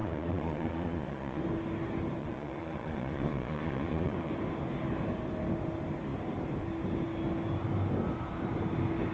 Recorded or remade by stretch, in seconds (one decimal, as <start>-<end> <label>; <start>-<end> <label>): 0.0-1.4 remade; 1.4-2.2 recorded; 2.2-4.3 remade; 4.3-9.1 recorded